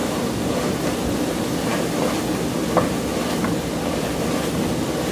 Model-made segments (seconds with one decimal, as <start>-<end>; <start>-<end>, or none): 0.0-0.5; 3.4-4.2